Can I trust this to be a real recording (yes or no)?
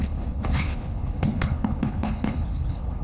no